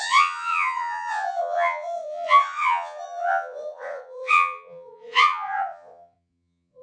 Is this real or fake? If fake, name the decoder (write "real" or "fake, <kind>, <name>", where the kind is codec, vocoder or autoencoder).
fake, vocoder, Vocos